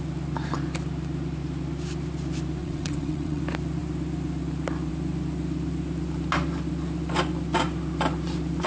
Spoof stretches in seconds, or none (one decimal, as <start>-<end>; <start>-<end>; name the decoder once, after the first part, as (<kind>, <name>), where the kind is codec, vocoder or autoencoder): 2.6-3.4 (vocoder, WaveNeXt)